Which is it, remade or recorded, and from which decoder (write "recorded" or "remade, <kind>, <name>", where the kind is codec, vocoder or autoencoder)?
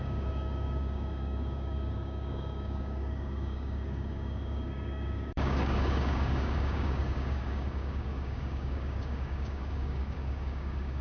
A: remade, codec, DAC